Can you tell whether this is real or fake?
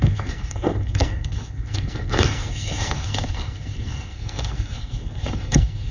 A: fake